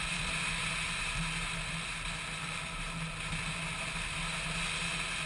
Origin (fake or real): real